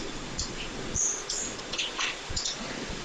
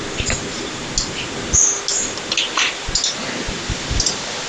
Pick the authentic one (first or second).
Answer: second